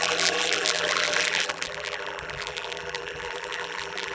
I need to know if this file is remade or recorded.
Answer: remade